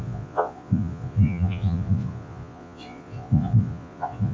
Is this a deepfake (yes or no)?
yes